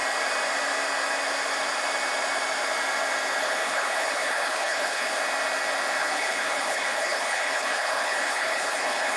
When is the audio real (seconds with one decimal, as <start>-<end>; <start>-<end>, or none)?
0.0-3.4; 5.2-6.0